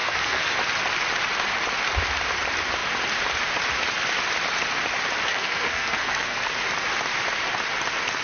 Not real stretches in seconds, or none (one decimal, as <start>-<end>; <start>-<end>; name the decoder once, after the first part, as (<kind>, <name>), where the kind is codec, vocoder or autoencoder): 0.0-0.5 (codec, SNAC); 5.3-6.5